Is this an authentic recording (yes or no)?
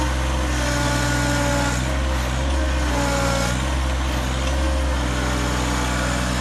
yes